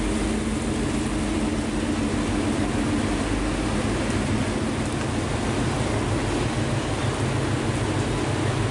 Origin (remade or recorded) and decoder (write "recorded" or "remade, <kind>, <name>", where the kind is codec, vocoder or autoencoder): recorded